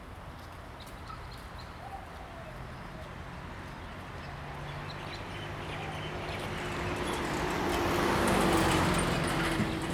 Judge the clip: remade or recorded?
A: recorded